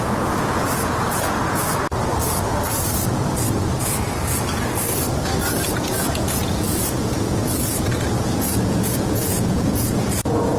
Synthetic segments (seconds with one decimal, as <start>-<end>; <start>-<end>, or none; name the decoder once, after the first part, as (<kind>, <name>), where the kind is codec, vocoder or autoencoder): 0.0-1.4 (vocoder, Vocos); 5.7-10.6